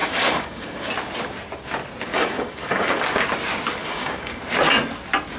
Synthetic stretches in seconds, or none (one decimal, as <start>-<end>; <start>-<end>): 0.0-0.9; 2.1-3.0; 3.8-4.4